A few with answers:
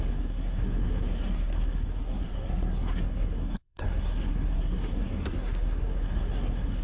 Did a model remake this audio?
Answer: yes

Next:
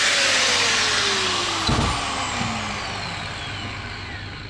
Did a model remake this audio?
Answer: no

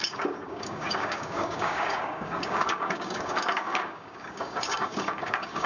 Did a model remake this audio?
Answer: yes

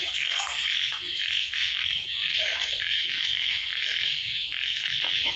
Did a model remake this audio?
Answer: yes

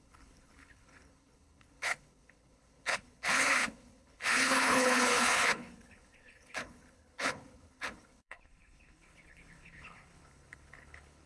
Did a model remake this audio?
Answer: yes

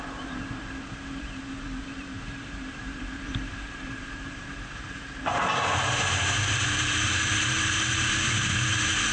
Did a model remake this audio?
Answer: yes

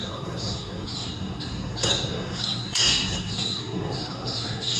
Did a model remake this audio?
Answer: yes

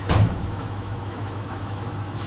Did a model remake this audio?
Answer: yes